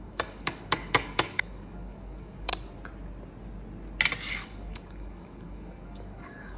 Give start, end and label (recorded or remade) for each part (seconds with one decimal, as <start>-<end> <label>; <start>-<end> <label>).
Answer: 0.0-2.5 remade; 2.5-4.3 recorded; 4.3-6.6 remade